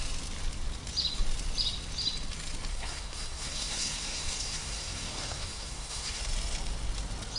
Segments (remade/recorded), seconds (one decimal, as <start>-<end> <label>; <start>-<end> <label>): 0.0-2.7 recorded; 2.7-6.2 remade; 6.2-7.4 recorded